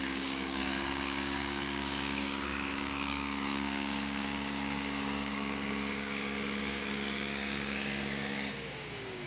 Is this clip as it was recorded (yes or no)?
no